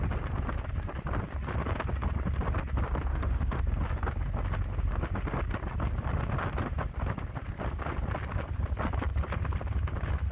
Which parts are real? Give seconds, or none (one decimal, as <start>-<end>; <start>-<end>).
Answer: 0.0-3.1; 3.6-10.3